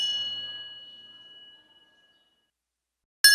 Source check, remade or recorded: recorded